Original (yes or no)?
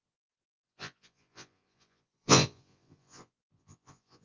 no